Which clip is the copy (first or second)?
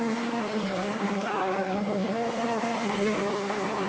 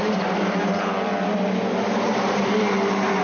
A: first